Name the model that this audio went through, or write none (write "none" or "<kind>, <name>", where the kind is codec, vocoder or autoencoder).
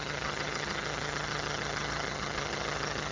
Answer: vocoder, HiFi-GAN